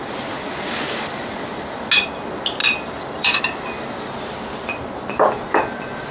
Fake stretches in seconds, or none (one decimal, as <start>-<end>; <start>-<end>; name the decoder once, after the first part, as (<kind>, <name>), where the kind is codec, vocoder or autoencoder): 2.6-3.4 (vocoder, BigVGAN v2)